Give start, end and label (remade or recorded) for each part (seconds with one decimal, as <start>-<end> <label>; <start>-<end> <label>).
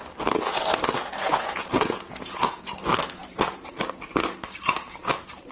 0.0-1.3 recorded; 1.3-2.7 remade; 2.7-5.5 recorded